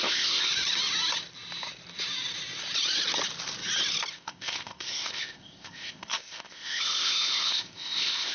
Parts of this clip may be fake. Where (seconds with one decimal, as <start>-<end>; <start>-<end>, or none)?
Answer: 0.0-0.5; 4.1-8.3